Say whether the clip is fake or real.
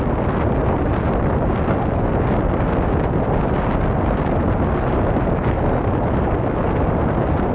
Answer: real